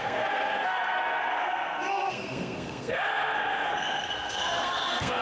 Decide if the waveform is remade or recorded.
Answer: remade